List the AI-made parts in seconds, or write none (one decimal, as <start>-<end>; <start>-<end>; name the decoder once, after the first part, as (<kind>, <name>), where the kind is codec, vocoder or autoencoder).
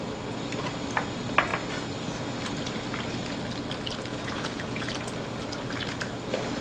4.1-4.9 (vocoder, Vocos)